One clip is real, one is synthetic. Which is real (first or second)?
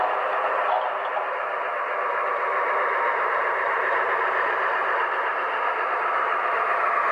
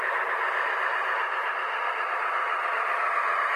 second